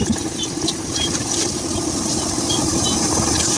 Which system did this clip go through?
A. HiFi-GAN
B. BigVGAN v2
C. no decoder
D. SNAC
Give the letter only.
B